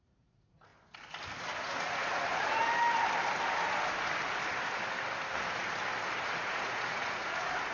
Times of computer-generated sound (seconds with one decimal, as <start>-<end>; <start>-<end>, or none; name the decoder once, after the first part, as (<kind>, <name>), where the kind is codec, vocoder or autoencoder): 0.0-0.7 (vocoder, Vocos); 1.6-2.6; 6.4-7.7